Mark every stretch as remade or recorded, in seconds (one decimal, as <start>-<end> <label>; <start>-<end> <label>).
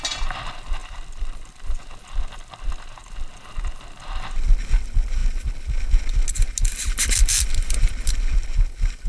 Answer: 0.0-0.8 recorded; 0.8-1.5 remade; 1.5-3.0 recorded; 3.0-3.6 remade; 3.6-9.1 recorded